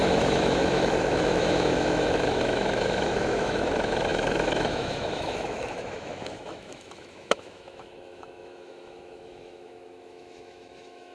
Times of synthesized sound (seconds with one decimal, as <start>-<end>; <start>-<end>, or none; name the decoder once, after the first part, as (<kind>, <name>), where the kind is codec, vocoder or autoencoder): 0.0-11.1 (autoencoder, DAC-VAE)